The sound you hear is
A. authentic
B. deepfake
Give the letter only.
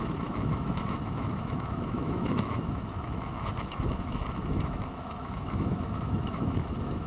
B